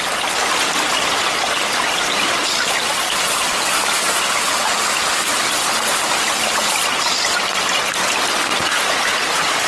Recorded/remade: recorded